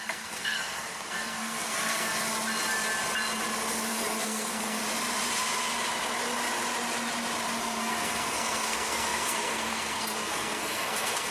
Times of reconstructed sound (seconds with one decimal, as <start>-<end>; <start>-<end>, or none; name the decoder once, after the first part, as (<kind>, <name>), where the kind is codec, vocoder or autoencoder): 0.0-2.1 (codec, SNAC); 3.9-4.8; 7.6-11.3